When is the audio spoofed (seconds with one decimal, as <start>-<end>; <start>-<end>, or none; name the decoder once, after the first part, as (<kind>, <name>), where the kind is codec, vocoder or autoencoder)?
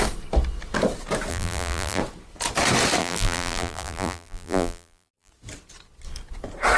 1.3-2.0 (vocoder, BigVGAN v2); 3.0-5.3